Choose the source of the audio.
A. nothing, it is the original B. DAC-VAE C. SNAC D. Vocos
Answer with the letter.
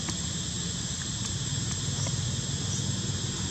A